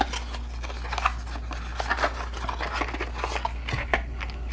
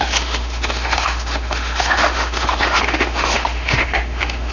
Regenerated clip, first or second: second